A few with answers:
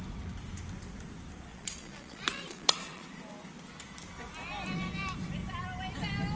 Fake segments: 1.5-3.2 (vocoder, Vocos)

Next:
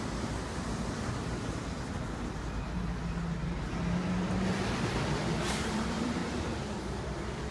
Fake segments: 0.0-1.6 (vocoder, BigVGAN v2); 5.1-7.5

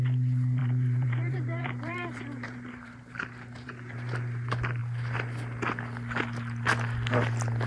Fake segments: 0.6-3.7 (vocoder, BigVGAN v2)

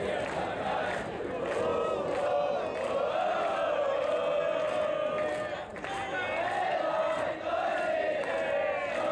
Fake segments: none

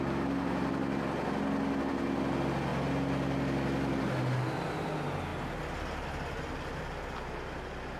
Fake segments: none

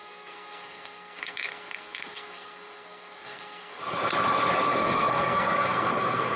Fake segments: 0.0-3.8 (codec, SNAC); 4.7-6.4

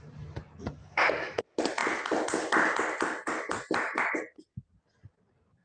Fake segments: 0.8-1.4 (codec, DAC)